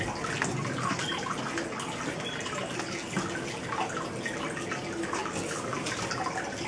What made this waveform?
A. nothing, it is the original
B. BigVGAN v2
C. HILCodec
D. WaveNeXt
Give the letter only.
A